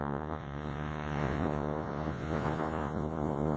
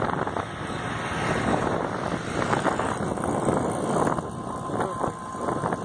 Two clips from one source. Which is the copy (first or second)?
first